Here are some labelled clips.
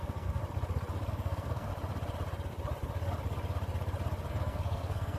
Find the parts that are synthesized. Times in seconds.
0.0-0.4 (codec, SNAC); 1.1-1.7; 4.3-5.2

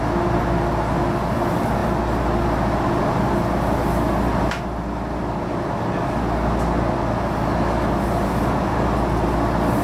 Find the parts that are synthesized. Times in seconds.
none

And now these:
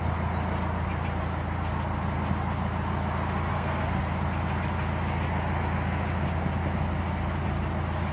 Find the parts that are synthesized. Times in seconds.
3.5-4.0 (codec, SNAC)

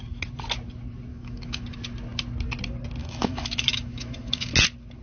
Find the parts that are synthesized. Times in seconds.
1.1-1.6 (autoencoder, DAC-VAE); 3.0-4.5